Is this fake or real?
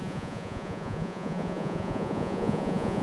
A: fake